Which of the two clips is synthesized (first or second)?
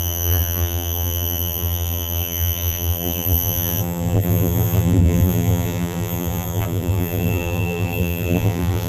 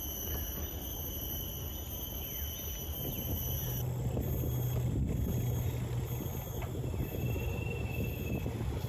first